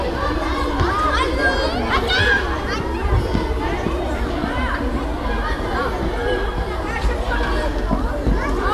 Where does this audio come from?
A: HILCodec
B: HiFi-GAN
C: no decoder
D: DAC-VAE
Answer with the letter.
C